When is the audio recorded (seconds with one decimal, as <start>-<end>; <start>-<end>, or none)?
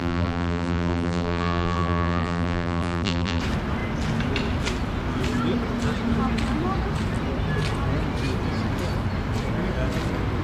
3.4-10.4